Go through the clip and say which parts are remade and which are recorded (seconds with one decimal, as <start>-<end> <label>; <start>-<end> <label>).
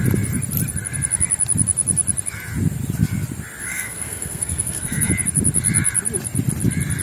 0.0-3.6 recorded; 3.6-5.1 remade; 5.1-7.0 recorded